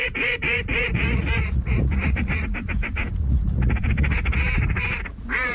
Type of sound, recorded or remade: remade